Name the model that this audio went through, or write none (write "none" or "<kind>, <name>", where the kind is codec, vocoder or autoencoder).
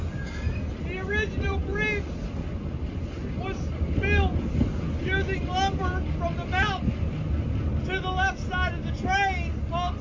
none